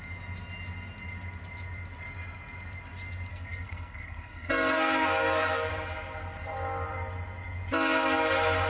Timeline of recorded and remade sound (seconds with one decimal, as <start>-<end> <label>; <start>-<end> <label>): 0.0-3.3 recorded; 3.3-5.7 remade; 5.7-8.7 recorded